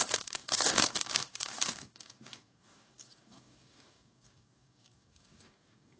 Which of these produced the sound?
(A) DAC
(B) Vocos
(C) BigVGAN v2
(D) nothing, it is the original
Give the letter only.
A